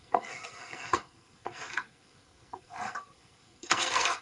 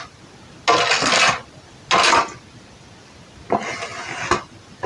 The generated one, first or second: first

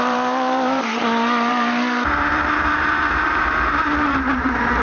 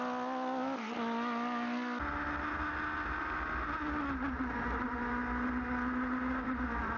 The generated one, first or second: first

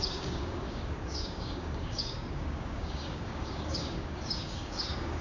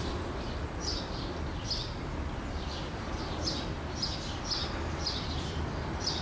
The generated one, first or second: first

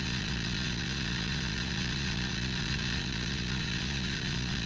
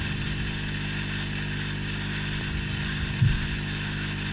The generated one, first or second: first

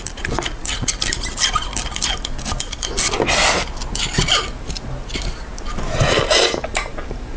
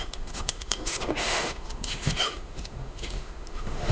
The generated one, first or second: second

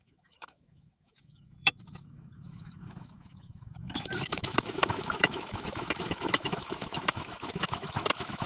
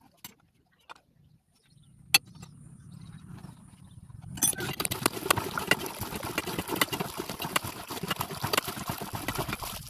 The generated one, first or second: first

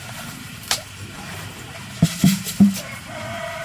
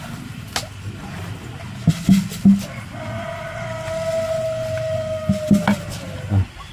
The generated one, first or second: first